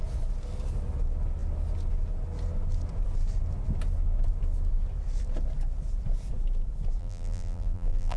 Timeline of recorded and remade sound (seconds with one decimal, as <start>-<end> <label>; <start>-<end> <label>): 0.0-7.0 recorded; 7.0-8.2 remade